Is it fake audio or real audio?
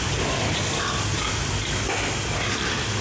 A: real